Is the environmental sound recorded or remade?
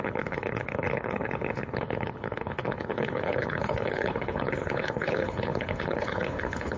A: remade